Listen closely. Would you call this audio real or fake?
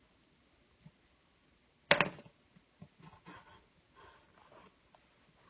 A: real